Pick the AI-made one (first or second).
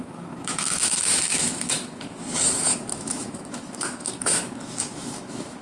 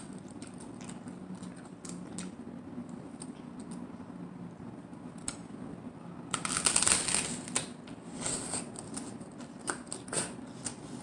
first